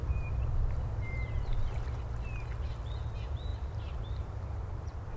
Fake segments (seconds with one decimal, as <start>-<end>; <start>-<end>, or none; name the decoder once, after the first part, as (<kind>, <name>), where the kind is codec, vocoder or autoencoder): 0.0-2.0 (vocoder, BigVGAN v2); 3.5-5.2